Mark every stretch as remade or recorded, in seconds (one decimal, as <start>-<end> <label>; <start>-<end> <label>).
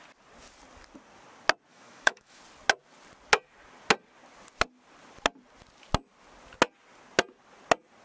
0.0-1.7 recorded; 1.7-2.4 remade; 2.4-8.0 recorded